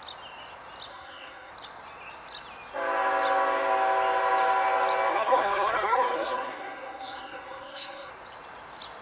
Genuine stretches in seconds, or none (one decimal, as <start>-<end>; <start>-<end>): 0.0-0.9; 1.5-5.1; 8.1-9.0